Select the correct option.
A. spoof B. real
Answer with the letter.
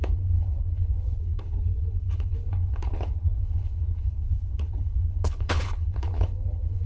A